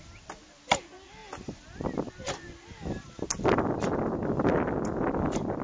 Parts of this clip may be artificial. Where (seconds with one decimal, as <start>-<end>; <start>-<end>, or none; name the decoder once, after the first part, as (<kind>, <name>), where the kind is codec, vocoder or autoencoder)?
none